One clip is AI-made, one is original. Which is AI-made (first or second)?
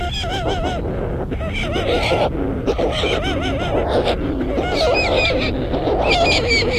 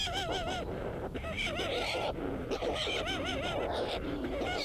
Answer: second